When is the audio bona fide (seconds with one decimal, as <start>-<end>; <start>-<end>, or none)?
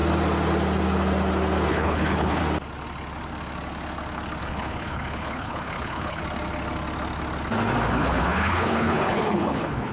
0.0-1.7; 2.4-4.4; 6.2-7.9